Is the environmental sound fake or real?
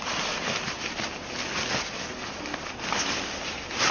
real